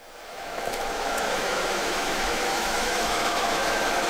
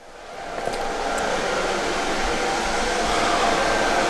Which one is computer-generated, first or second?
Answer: first